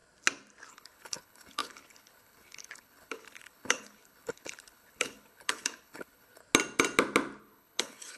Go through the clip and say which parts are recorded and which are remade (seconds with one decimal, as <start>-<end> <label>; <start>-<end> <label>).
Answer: 0.0-0.7 recorded; 0.7-6.4 remade; 6.4-7.4 recorded; 7.4-8.2 remade